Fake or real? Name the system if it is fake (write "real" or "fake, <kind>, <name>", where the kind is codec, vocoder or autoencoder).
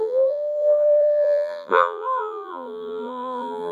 fake, vocoder, BigVGAN v2